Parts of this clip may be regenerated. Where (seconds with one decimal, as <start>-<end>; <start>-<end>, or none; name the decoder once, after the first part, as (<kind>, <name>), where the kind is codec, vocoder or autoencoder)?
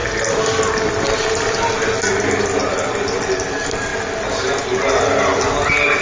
none